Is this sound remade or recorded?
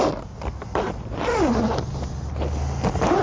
recorded